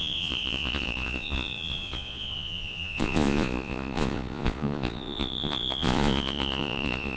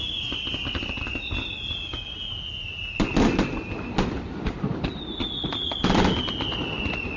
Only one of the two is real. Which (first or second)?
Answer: second